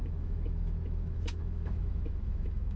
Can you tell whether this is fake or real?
fake